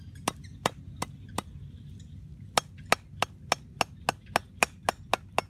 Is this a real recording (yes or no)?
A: yes